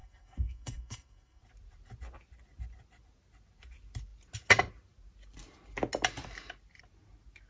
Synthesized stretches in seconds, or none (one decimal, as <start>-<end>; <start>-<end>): 0.0-1.4